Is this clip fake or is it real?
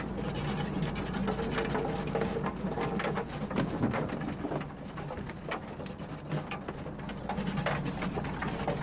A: real